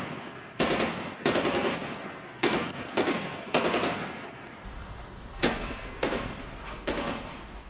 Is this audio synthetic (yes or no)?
yes